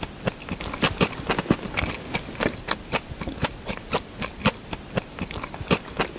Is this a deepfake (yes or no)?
no